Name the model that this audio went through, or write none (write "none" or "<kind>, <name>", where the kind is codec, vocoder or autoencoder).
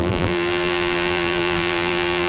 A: vocoder, BigVGAN v2